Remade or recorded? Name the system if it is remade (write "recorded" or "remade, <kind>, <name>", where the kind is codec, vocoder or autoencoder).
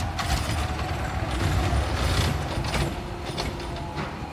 recorded